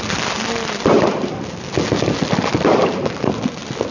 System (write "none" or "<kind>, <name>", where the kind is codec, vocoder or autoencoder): none